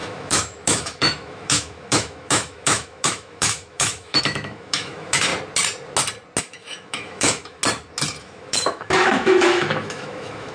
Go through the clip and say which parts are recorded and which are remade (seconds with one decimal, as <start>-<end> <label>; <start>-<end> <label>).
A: 0.0-5.3 remade; 5.3-6.4 recorded; 6.4-7.6 remade; 7.6-8.2 recorded; 8.2-10.5 remade